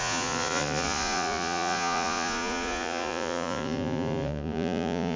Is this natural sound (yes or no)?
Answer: no